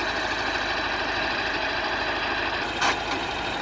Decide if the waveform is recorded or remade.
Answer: recorded